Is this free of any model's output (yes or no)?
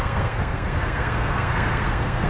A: no